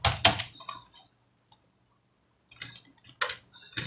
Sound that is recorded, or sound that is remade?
recorded